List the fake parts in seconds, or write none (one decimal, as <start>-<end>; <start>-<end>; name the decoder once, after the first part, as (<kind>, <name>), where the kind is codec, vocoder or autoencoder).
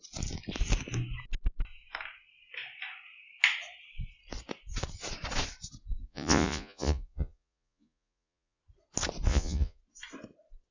6.0-8.6 (vocoder, Vocos); 9.3-9.8